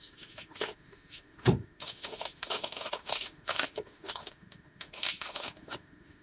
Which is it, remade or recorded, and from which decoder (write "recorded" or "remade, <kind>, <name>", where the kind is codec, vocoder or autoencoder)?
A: remade, autoencoder, DAC-VAE